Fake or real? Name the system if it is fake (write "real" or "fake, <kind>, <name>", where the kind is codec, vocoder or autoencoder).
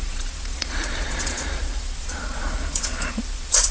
fake, vocoder, Vocos